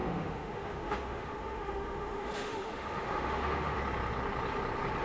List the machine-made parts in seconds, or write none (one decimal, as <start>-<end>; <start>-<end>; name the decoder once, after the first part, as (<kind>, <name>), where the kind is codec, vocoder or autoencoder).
0.0-3.8 (autoencoder, DAC-VAE)